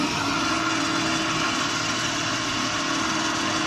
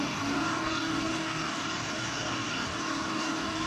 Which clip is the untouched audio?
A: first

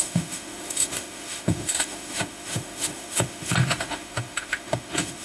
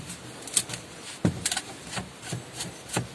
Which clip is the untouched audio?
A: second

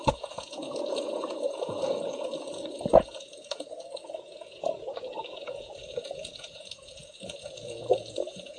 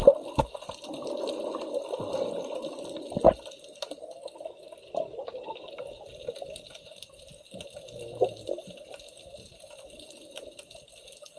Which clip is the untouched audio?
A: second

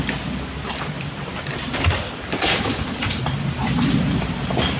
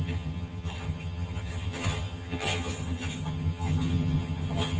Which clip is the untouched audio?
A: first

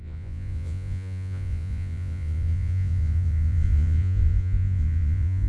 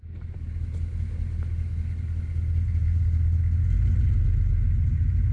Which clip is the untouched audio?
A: second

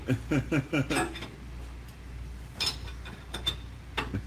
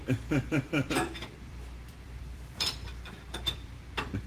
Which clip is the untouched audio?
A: first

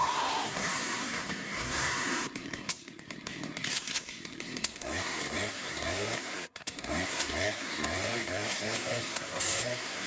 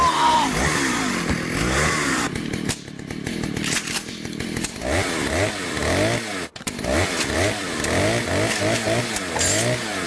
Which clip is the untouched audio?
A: second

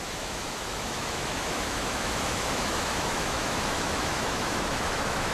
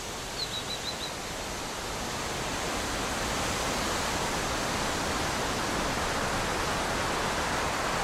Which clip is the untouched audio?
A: second